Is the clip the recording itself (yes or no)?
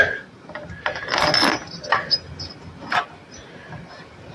yes